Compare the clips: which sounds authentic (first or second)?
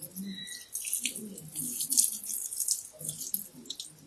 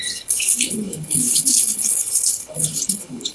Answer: first